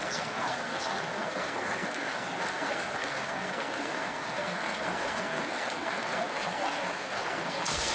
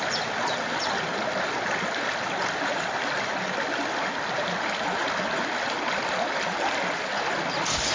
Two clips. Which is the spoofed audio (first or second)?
first